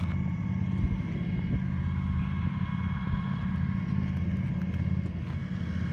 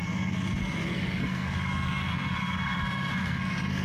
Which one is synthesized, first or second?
second